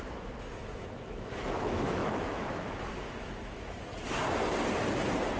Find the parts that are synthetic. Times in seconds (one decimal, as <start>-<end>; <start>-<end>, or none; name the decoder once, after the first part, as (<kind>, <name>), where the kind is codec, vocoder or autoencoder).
0.0-3.9 (autoencoder, DAC-VAE)